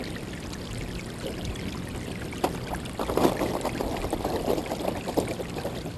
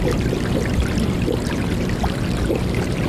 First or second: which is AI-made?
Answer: first